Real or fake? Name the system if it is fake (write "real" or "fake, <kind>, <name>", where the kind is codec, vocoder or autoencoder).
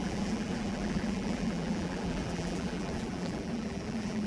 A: fake, vocoder, BigVGAN v2